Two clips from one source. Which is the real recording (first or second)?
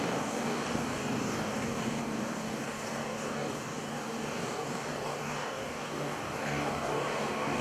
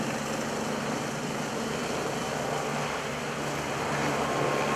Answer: second